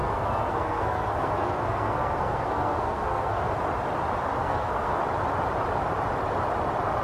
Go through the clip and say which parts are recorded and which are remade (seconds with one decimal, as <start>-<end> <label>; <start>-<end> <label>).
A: 0.0-3.5 remade; 3.5-4.4 recorded; 4.4-5.0 remade; 5.0-7.0 recorded